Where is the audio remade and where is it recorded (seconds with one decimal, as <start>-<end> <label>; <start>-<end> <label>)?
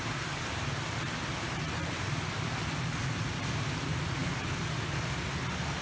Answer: 0.0-5.8 recorded